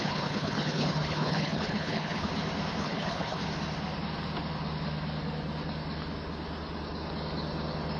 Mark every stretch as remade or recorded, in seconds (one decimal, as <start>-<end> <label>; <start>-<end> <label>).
0.0-2.3 remade; 2.3-2.8 recorded; 2.8-3.4 remade; 3.4-8.0 recorded